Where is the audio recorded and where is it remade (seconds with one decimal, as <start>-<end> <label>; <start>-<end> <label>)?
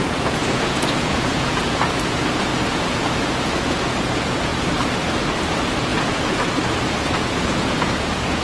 0.0-4.5 remade; 4.5-5.5 recorded; 5.5-8.4 remade